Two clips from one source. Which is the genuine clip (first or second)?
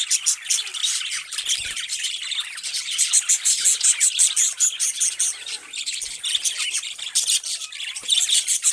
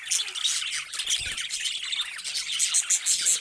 second